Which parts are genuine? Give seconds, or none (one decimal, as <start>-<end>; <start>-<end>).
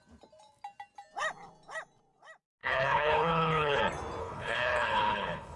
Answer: 0.0-2.6; 3.8-4.2